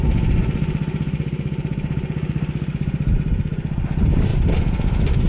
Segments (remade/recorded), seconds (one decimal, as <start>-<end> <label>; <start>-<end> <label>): 0.0-5.3 recorded